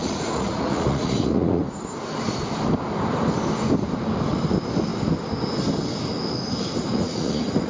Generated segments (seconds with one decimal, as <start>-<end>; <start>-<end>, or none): 0.0-1.6; 6.9-7.7

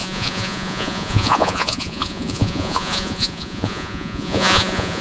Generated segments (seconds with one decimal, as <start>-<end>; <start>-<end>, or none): 0.0-5.0

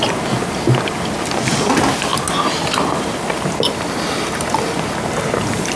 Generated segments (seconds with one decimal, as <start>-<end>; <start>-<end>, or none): none

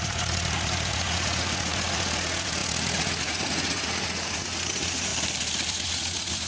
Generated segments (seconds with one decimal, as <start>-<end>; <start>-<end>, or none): 0.0-5.1; 5.7-6.5

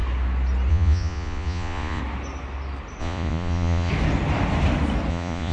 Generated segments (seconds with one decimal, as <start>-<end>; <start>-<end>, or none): 0.7-2.0; 3.0-3.9; 5.1-5.5

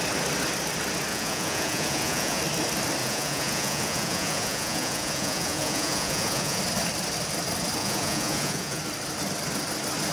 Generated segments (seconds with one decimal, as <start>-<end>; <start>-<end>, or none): 1.1-2.4; 3.0-6.6; 7.8-8.8

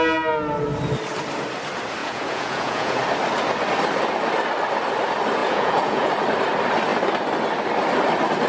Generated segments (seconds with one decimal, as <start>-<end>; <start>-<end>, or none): 2.0-3.0; 5.4-6.1

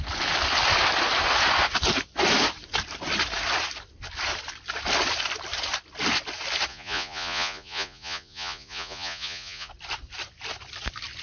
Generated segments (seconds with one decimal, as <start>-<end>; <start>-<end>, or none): 6.7-9.7